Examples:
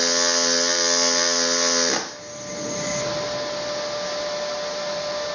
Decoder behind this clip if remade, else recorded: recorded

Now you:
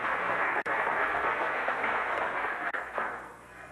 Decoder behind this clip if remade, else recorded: remade, codec, SNAC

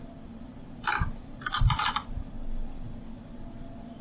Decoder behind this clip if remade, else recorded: recorded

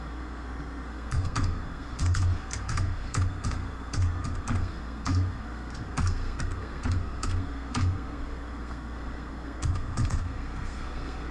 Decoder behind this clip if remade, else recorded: remade, codec, SNAC